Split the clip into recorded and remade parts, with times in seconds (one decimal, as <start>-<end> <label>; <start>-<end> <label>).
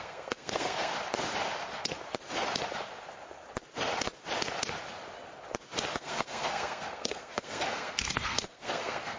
0.0-0.9 remade; 0.9-5.9 recorded; 5.9-9.2 remade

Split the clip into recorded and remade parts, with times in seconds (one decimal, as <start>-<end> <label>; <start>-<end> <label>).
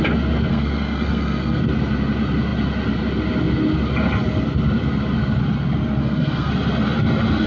0.0-0.5 recorded; 0.5-1.6 remade; 1.6-6.0 recorded; 6.0-6.5 remade; 6.5-7.5 recorded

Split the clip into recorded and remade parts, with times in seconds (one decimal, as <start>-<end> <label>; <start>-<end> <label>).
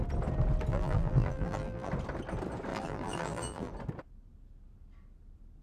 0.0-0.7 recorded; 0.7-1.9 remade; 1.9-2.7 recorded; 2.7-3.7 remade; 3.7-5.6 recorded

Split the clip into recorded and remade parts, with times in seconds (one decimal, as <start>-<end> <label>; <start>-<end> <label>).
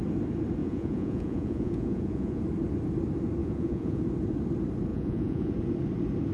0.0-0.6 recorded; 0.6-2.4 remade; 2.4-3.4 recorded; 3.4-4.0 remade; 4.0-4.9 recorded; 4.9-5.5 remade; 5.5-6.3 recorded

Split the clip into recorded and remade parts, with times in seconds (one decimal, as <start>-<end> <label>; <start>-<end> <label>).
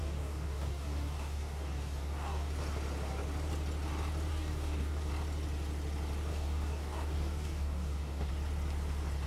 0.0-2.5 remade; 2.5-4.3 recorded; 4.3-5.1 remade; 5.1-6.3 recorded; 6.3-8.3 remade; 8.3-9.3 recorded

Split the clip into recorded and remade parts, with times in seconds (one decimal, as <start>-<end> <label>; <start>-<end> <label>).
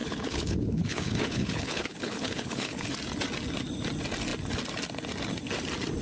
0.0-2.9 remade; 2.9-6.0 recorded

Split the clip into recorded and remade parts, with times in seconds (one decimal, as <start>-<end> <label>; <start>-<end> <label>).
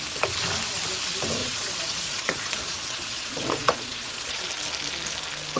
0.0-1.4 recorded; 1.4-4.4 remade; 4.4-5.6 recorded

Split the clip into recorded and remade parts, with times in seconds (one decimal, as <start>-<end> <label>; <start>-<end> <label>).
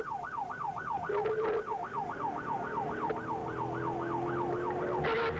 0.0-5.4 recorded